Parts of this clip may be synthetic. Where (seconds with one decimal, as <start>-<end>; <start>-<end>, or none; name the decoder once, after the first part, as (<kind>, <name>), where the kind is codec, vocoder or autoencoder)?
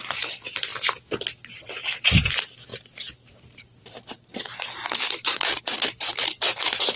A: 2.7-5.6 (vocoder, BigVGAN v2)